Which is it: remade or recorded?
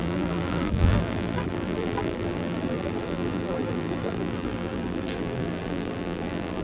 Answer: remade